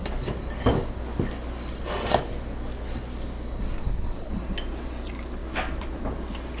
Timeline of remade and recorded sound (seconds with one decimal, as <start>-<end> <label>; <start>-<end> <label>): 0.0-3.8 recorded; 3.8-4.3 remade; 4.3-6.6 recorded